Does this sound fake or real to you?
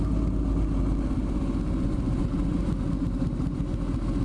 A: real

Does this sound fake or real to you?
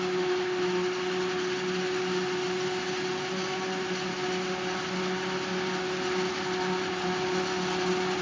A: real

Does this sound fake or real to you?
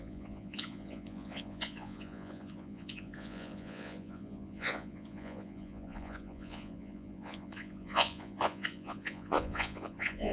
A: fake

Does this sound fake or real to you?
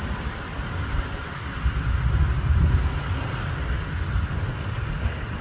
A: real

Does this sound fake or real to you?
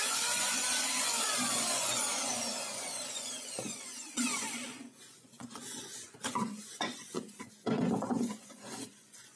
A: fake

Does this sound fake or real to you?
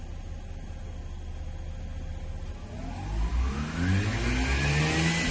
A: real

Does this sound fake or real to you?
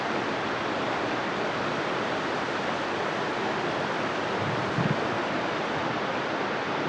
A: real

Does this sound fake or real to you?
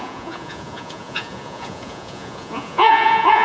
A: fake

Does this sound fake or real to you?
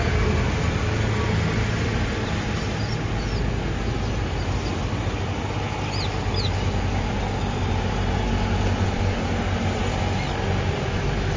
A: real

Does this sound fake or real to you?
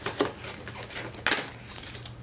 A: real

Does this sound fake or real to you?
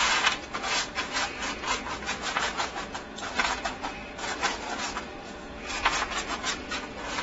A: fake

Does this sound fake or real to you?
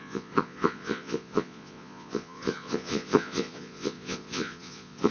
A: fake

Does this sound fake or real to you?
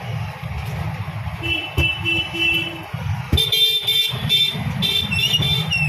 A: real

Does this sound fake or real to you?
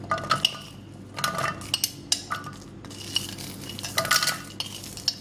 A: real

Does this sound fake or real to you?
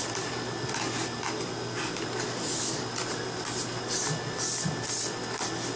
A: real